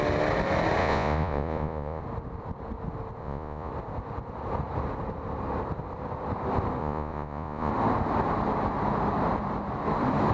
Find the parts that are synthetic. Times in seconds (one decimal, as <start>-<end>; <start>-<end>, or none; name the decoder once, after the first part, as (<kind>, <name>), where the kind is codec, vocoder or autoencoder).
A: 0.8-2.0 (vocoder, Vocos); 3.2-3.7; 6.8-7.7

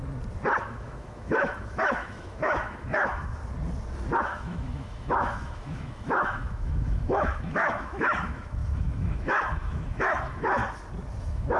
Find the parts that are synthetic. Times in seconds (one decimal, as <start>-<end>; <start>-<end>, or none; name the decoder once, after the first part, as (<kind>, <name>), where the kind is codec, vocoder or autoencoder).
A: 0.6-3.4 (autoencoder, DAC-VAE); 4.2-10.6; 11.2-11.6